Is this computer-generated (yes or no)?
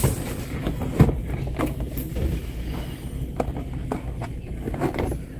no